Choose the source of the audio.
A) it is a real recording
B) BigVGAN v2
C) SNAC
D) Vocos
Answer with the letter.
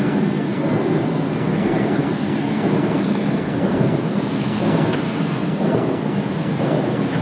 C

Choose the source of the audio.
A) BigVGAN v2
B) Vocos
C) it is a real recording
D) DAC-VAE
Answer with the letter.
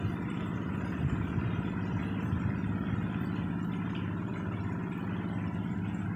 C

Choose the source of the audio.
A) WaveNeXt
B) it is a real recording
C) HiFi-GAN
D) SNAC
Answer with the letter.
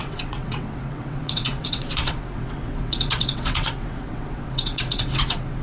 A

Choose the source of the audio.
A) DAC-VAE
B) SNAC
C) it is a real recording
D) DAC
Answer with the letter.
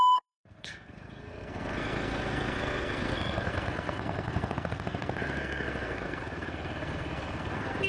B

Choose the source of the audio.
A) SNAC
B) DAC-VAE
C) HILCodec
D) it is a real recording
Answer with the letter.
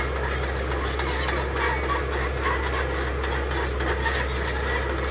D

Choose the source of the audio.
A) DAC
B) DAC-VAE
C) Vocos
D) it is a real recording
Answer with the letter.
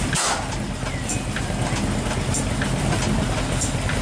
D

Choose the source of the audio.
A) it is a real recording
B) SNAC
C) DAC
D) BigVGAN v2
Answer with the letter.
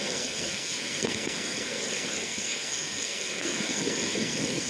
B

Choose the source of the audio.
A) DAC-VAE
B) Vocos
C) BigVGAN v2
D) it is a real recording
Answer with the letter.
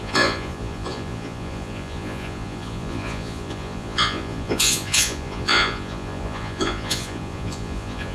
B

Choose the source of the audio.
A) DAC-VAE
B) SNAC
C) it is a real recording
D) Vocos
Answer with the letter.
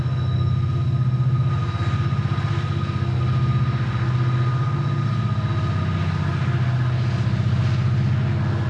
C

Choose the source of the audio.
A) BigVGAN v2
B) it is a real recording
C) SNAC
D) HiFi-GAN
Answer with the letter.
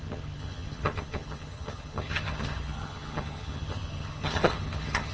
D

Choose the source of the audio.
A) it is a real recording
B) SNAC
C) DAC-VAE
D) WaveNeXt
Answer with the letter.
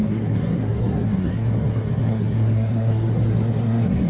B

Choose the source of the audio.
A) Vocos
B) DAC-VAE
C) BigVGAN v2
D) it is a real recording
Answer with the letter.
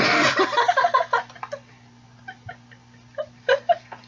D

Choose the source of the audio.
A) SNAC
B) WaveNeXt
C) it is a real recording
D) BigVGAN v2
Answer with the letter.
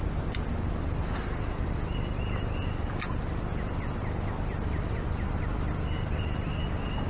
C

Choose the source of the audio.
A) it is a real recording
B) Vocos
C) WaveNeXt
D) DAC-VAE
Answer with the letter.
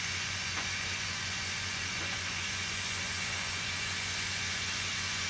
B